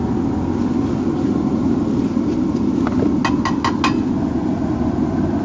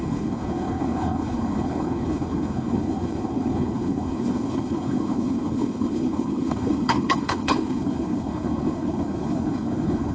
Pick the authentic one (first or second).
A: first